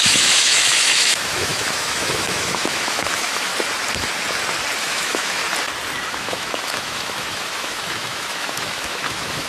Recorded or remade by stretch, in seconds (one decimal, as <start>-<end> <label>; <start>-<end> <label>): 0.0-3.5 remade; 3.5-4.8 recorded; 4.8-5.4 remade; 5.4-6.1 recorded; 6.1-9.5 remade